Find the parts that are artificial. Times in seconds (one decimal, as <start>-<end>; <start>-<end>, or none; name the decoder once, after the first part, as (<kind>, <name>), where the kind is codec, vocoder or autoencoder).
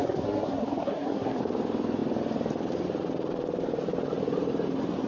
0.0-1.4 (codec, SNAC)